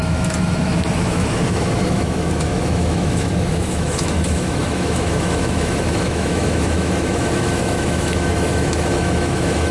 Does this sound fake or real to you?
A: fake